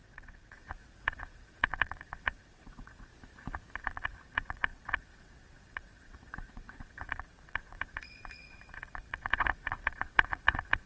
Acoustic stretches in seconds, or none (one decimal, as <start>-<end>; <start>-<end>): 3.1-3.8